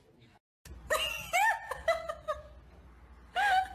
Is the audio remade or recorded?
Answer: recorded